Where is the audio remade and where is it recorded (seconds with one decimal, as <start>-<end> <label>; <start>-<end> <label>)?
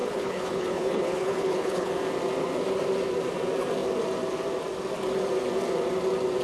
0.0-1.9 remade; 1.9-6.4 recorded